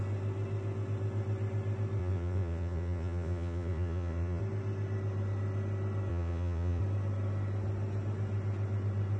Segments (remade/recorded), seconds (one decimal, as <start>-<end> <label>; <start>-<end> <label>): 0.0-2.0 recorded; 2.0-4.4 remade; 4.4-6.1 recorded; 6.1-6.8 remade; 6.8-9.2 recorded